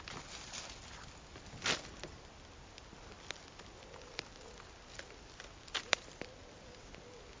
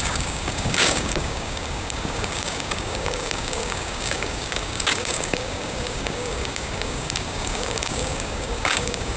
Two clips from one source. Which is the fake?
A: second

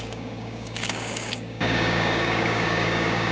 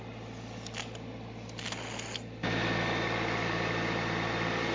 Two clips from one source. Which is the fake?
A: first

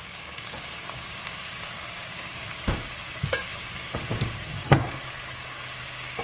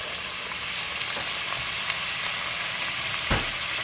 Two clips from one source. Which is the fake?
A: first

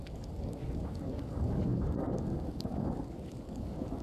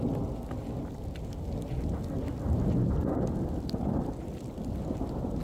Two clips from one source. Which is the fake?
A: first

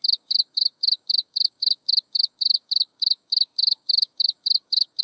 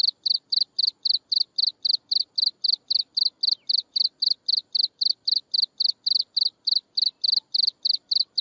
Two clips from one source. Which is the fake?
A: first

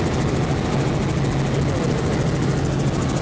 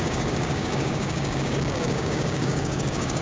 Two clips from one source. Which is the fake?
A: second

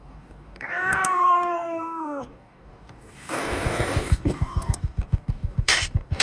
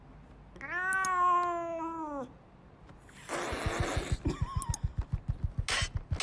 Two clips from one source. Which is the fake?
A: first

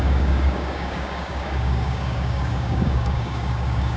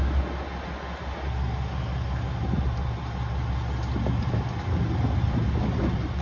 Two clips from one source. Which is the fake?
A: first